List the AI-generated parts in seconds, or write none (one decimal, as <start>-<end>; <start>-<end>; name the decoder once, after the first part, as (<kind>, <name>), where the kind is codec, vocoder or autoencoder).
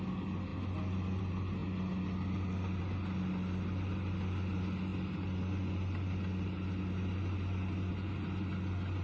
none